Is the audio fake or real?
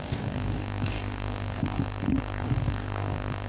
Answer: fake